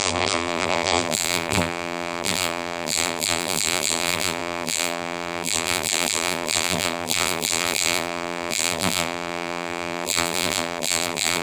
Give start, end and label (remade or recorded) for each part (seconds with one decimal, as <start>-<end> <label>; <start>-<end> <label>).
0.0-11.4 remade